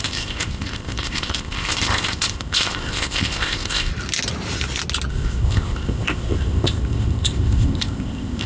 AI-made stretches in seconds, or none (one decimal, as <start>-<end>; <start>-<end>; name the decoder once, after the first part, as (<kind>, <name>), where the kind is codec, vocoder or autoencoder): 0.0-3.9 (codec, ZipCodec); 5.1-8.5